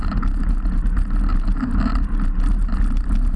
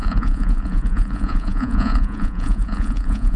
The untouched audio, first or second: first